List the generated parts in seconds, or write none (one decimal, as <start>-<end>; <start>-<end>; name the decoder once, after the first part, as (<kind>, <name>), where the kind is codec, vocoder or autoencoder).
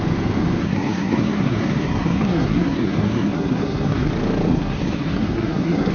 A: 0.6-4.1 (codec, SNAC); 4.5-5.9